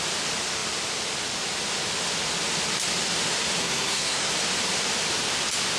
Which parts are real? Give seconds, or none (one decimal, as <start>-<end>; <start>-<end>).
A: 0.0-3.6; 4.3-5.8